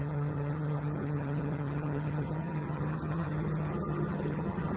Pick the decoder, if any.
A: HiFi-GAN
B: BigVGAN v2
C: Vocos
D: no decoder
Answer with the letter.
A